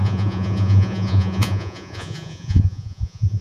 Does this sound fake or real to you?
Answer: fake